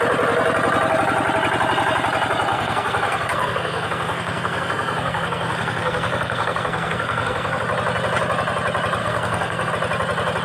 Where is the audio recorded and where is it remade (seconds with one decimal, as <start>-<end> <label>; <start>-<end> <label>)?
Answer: 0.0-2.5 recorded; 2.5-7.6 remade; 7.6-9.0 recorded; 9.0-9.7 remade; 9.7-10.4 recorded